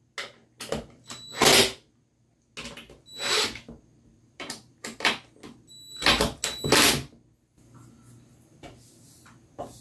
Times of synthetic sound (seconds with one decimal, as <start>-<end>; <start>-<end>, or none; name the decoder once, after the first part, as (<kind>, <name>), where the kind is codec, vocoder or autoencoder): 4.1-5.1 (vocoder, BigVGAN v2)